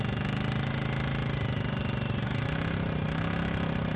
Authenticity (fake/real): real